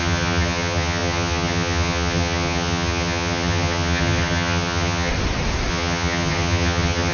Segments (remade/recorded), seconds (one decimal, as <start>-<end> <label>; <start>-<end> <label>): 0.0-5.1 remade; 5.1-5.7 recorded; 5.7-7.1 remade